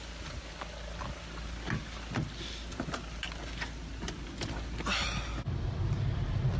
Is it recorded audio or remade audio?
recorded